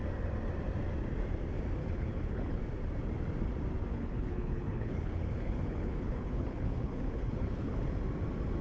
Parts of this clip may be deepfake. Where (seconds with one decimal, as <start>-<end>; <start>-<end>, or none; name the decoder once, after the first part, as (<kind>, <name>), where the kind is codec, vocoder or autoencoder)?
1.8-2.6 (codec, HILCodec); 3.9-8.0